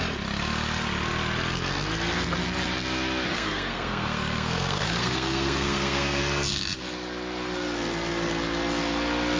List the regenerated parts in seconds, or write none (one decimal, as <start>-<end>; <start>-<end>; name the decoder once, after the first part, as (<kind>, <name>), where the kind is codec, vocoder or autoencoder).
3.3-6.2 (codec, SNAC)